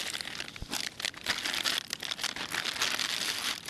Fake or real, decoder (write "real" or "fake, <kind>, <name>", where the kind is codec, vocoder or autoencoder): real